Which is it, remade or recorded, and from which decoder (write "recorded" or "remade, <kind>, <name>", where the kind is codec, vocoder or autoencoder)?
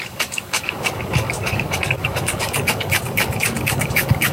remade, codec, DAC